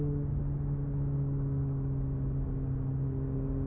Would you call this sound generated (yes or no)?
no